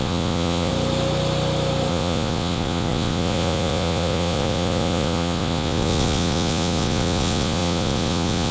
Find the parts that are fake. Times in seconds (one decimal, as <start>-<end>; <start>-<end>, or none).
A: 0.0-0.7; 1.9-8.5